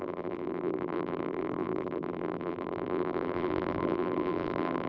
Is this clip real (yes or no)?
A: no